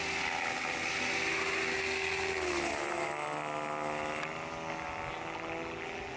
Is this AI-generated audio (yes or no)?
no